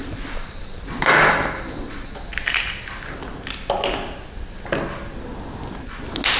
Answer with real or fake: real